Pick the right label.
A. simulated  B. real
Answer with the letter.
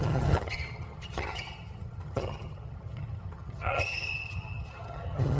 A